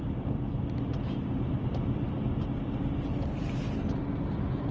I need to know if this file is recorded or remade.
recorded